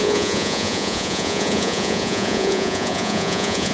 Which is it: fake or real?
fake